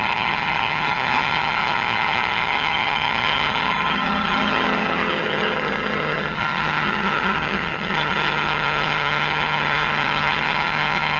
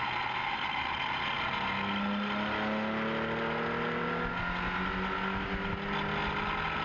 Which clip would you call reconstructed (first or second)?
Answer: first